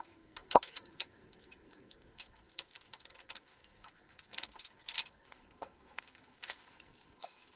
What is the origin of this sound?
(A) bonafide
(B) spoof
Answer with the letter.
B